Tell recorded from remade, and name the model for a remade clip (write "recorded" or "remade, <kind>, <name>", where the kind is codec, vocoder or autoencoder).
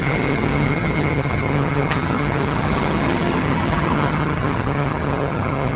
remade, vocoder, HiFi-GAN